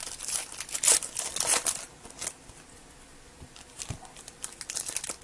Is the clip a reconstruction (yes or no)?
no